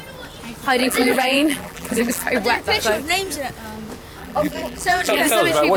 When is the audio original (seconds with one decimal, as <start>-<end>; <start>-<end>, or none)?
0.0-0.8; 2.3-4.2; 5.2-5.8